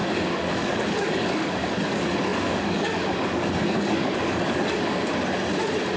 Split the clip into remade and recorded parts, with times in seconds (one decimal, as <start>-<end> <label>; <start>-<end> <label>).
0.0-5.1 remade; 5.1-6.0 recorded